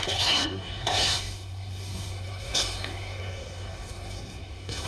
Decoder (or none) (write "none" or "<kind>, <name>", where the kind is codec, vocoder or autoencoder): codec, SNAC